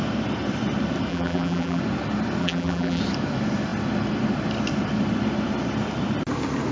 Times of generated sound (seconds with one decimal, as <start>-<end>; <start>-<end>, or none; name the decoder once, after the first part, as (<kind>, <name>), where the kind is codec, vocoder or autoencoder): 1.1-1.8 (vocoder, BigVGAN v2); 2.4-3.0